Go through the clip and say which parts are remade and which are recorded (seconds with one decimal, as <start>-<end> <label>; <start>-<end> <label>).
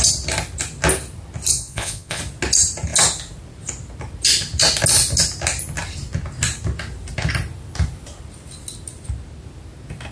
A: 0.0-1.5 recorded; 1.5-2.2 remade; 2.2-10.1 recorded